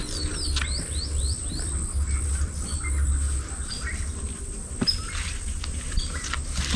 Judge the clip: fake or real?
real